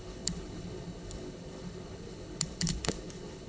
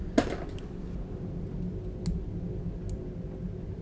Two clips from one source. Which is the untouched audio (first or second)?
second